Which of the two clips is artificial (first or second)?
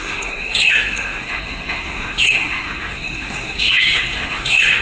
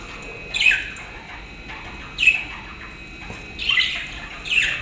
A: first